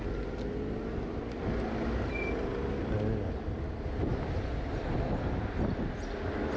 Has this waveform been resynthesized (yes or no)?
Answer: no